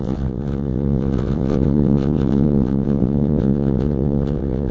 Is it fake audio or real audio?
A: fake